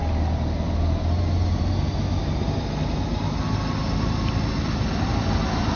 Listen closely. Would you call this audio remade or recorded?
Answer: recorded